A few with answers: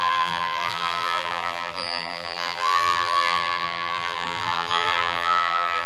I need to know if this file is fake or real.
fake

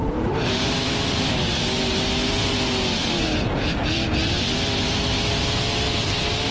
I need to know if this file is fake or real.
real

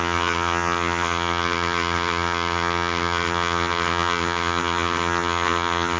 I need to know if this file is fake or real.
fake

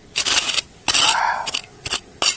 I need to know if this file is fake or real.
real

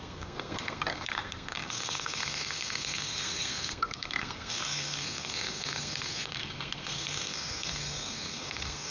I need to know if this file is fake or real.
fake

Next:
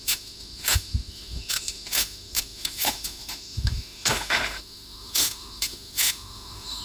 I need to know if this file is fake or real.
fake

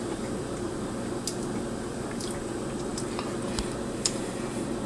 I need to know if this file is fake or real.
real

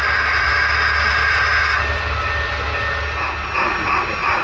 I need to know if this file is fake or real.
real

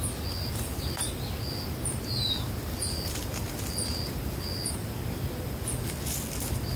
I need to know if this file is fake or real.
real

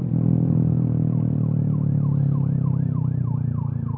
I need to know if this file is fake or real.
fake